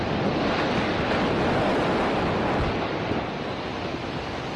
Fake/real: real